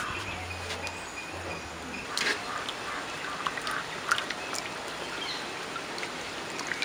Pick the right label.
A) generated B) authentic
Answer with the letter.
B